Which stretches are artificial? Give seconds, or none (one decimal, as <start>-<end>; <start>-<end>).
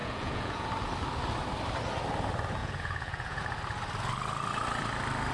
0.0-0.7; 2.6-3.4